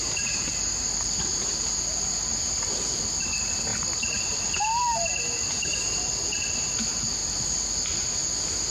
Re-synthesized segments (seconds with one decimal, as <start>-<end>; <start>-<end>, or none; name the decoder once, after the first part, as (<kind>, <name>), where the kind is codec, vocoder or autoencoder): none